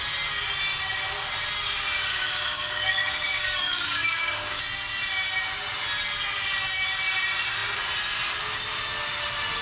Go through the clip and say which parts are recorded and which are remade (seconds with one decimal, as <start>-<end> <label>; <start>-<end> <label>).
0.0-2.1 recorded; 2.1-4.6 remade; 4.6-9.6 recorded